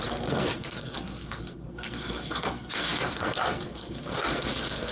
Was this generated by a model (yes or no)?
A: yes